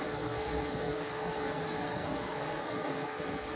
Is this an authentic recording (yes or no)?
no